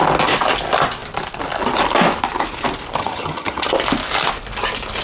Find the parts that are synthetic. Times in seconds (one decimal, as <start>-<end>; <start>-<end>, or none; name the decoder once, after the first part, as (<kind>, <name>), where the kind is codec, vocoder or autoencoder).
3.0-3.7 (vocoder, HiFi-GAN)